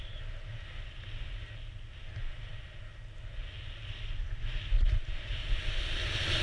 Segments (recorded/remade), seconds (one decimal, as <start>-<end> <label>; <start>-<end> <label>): 0.0-6.4 recorded